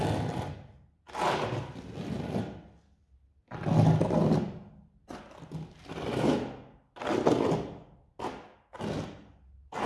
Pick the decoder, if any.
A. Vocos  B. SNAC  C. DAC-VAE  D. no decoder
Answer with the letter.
D